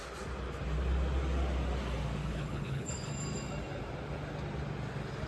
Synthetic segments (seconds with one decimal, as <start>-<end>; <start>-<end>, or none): 2.3-3.1